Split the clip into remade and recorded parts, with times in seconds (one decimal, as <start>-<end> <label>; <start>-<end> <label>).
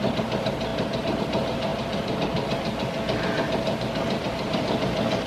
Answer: 0.0-5.3 recorded